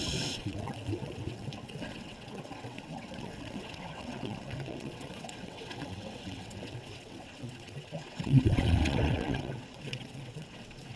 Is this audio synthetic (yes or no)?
yes